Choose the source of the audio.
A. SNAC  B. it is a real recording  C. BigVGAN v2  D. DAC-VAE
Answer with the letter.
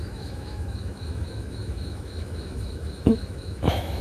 D